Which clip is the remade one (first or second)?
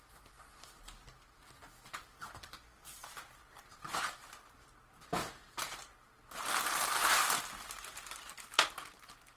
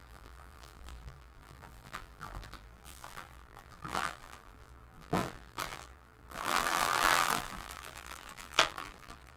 second